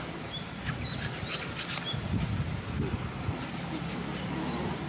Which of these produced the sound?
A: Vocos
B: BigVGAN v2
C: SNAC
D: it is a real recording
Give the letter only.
D